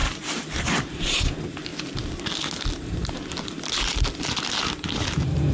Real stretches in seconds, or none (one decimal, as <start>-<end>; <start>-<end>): 1.0-5.5